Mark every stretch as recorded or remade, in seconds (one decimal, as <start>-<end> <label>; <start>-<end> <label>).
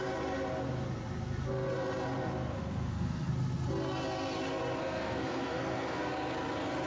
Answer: 0.0-2.5 recorded; 2.5-3.3 remade; 3.3-4.8 recorded; 4.8-6.1 remade; 6.1-6.9 recorded